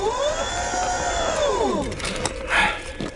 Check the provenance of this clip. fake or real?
fake